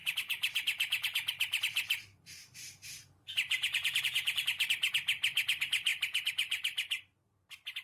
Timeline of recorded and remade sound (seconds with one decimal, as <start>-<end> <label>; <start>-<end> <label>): 0.0-4.7 remade; 4.7-5.9 recorded; 5.9-7.0 remade; 7.0-7.8 recorded